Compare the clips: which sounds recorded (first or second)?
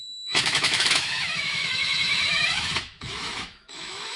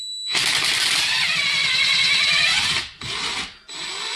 second